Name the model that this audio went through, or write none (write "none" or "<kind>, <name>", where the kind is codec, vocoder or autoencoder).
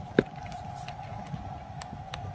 none